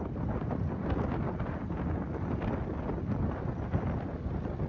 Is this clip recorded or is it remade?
recorded